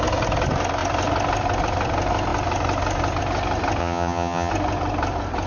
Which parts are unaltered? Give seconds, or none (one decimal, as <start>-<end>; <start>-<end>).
0.0-3.8; 4.5-5.5